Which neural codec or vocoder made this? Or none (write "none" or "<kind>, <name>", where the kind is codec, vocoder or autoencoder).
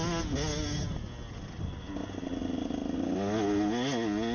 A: none